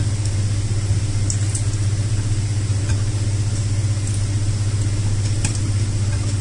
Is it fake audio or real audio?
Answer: real